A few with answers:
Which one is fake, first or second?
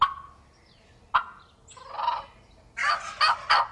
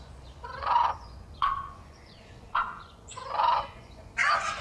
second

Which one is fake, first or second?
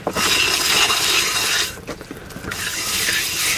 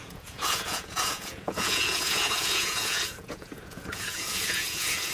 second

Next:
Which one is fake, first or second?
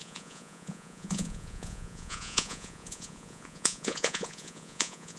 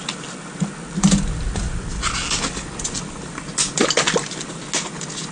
first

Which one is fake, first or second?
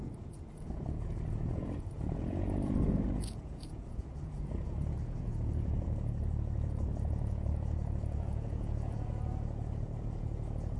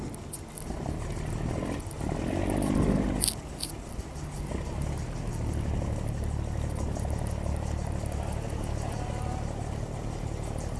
first